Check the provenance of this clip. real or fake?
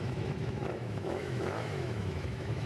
fake